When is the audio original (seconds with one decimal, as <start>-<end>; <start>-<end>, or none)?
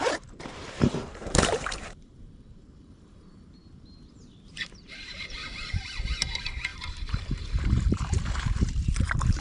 3.6-5.0